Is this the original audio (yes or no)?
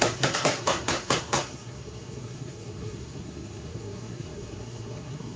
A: no